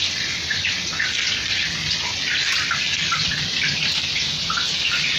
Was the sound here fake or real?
real